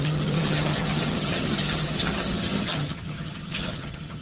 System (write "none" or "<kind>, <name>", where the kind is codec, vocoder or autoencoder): vocoder, HiFi-GAN